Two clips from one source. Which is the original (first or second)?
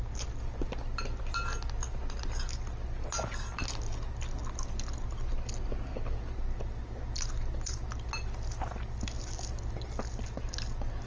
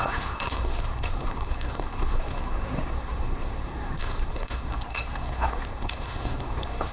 first